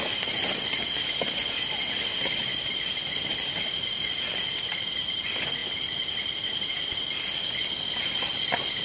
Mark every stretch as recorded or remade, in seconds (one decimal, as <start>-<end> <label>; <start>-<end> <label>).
0.0-5.6 remade; 5.6-8.2 recorded; 8.2-8.8 remade